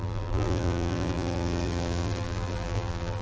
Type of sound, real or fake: fake